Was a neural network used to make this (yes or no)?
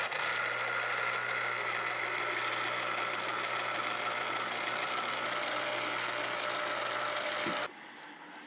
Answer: no